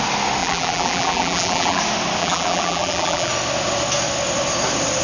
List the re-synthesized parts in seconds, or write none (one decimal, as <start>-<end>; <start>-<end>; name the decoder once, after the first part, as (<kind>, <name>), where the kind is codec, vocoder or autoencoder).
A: 0.4-1.8 (vocoder, BigVGAN v2); 2.2-3.3